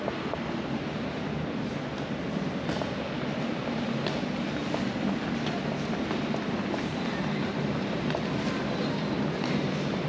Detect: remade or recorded recorded